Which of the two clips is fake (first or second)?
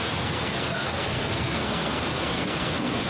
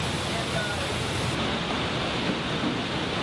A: first